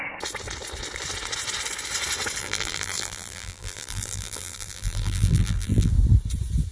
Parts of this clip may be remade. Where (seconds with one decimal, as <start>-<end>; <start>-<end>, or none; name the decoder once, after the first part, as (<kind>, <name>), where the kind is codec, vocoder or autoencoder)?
2.4-5.9 (vocoder, BigVGAN v2)